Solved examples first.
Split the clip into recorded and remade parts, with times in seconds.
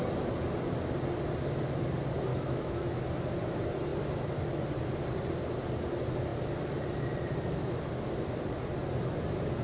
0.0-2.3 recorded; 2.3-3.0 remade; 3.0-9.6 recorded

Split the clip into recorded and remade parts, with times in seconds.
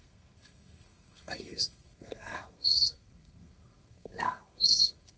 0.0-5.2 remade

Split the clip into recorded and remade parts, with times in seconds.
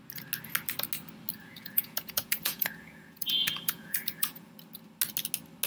0.0-1.4 recorded; 1.4-4.5 remade; 4.5-5.7 recorded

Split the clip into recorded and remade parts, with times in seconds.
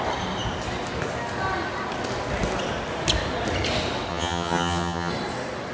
0.0-4.1 recorded; 4.1-5.1 remade; 5.1-5.7 recorded